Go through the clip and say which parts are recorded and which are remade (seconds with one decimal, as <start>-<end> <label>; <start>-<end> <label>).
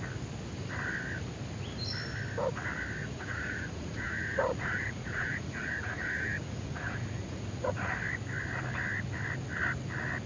0.0-3.0 recorded; 3.0-7.9 remade; 7.9-10.3 recorded